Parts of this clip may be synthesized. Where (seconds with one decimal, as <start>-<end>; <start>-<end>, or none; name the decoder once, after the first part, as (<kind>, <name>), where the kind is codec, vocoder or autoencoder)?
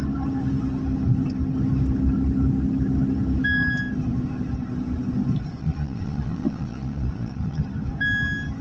5.6-7.6 (vocoder, Vocos)